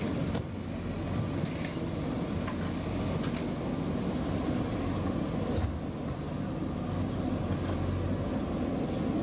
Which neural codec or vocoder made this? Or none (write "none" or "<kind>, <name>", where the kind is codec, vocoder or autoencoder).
none